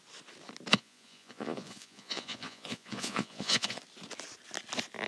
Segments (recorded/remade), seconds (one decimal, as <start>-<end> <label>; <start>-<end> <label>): 0.0-0.7 recorded; 0.7-3.8 remade; 3.8-5.1 recorded